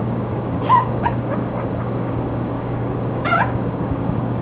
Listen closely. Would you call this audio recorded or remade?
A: remade